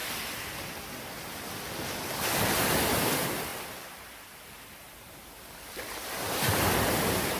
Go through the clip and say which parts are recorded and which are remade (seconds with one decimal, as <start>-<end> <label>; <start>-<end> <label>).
0.0-7.4 recorded